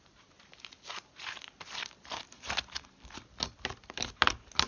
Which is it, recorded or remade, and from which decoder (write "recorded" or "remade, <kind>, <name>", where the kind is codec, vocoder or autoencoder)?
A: recorded